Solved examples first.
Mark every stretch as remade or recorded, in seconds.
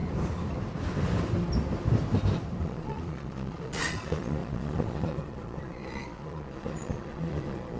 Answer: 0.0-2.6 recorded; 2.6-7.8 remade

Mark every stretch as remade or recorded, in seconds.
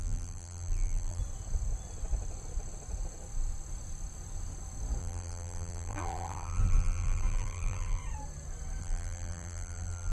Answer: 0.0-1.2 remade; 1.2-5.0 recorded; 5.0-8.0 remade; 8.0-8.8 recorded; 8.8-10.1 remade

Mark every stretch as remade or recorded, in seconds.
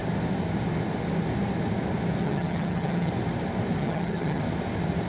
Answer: 0.0-2.2 recorded; 2.2-3.1 remade; 3.1-3.8 recorded; 3.8-4.4 remade; 4.4-5.1 recorded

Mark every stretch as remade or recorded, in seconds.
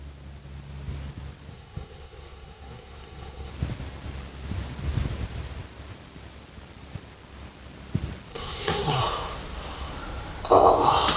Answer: 0.0-1.5 recorded; 1.5-3.5 remade; 3.5-8.3 recorded; 8.3-9.0 remade; 9.0-11.2 recorded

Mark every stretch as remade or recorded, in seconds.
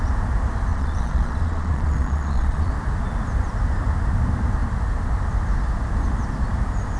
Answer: 0.0-0.7 recorded; 0.7-2.7 remade; 2.7-7.0 recorded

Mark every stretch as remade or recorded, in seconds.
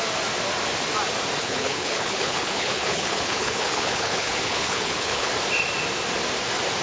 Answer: 0.0-1.4 recorded; 1.4-5.3 remade; 5.3-6.8 recorded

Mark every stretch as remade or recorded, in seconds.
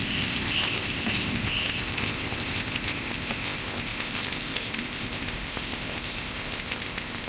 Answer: 0.0-7.3 remade